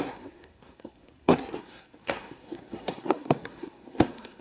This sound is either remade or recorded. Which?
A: remade